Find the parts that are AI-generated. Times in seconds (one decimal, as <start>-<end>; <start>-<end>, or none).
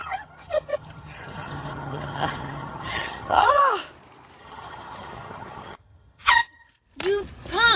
0.0-3.6; 4.4-6.7